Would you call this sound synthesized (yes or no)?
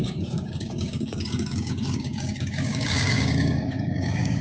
yes